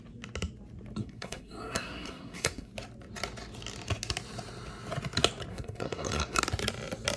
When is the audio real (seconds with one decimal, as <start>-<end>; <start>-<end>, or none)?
0.0-1.0; 2.7-5.5; 6.4-7.2